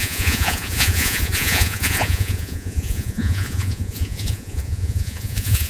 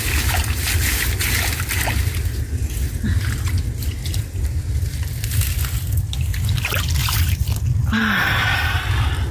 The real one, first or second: second